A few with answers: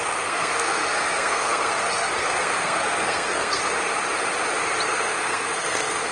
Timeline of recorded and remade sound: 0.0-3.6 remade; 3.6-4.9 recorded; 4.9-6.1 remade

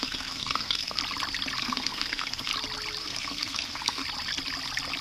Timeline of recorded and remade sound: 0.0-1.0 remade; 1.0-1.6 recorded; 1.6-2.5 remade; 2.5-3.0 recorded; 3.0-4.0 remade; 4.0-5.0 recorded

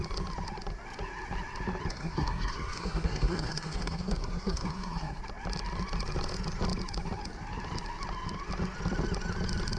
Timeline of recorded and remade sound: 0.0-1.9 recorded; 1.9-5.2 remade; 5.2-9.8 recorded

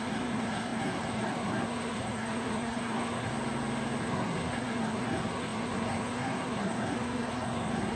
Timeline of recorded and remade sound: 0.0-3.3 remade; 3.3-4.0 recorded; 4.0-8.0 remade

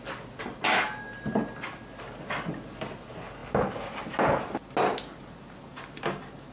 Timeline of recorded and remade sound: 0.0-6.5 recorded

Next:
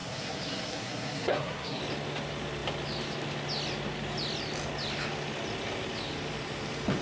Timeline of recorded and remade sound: 0.0-1.8 remade; 1.8-7.0 recorded